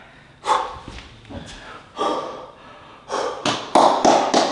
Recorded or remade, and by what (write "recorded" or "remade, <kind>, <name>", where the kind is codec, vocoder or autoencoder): recorded